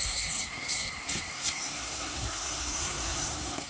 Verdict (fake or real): fake